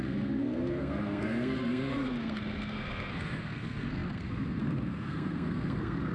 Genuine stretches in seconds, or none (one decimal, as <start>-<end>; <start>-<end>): none